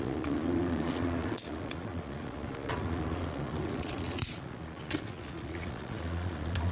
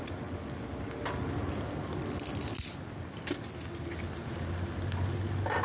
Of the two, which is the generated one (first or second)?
first